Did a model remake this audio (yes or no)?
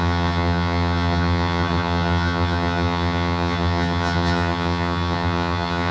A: yes